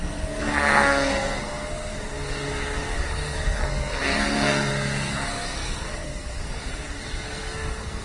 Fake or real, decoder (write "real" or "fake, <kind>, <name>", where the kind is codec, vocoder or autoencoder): fake, codec, SNAC